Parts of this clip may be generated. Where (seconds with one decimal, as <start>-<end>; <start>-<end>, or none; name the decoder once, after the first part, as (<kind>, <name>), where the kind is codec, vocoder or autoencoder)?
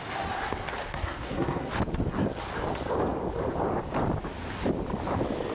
0.9-1.7 (codec, SNAC)